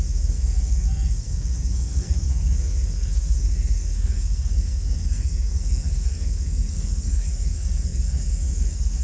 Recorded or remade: remade